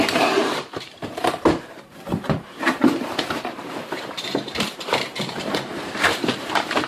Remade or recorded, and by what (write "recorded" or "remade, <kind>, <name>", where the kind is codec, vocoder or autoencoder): remade, vocoder, BigVGAN v2